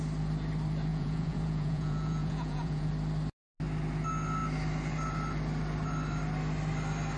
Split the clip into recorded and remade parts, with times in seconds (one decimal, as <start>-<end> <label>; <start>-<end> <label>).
0.0-0.9 recorded; 0.9-2.9 remade; 2.9-7.2 recorded